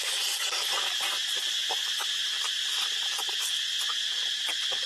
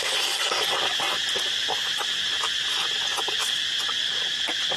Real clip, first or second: second